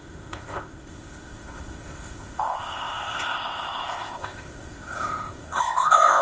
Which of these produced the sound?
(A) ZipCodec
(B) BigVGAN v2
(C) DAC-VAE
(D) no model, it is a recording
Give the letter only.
A